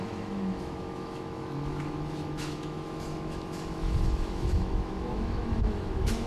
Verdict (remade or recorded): remade